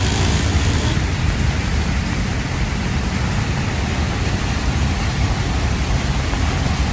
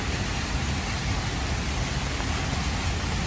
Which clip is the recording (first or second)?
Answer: second